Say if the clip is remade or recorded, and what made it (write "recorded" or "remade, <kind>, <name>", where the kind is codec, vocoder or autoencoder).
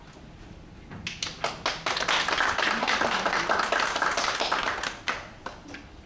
recorded